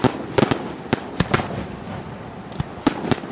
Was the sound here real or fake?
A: real